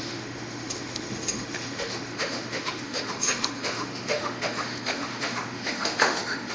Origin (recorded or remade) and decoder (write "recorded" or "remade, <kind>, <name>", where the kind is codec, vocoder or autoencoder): remade, autoencoder, DAC-VAE